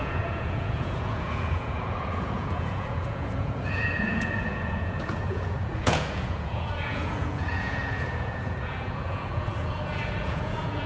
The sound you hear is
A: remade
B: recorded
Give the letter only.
A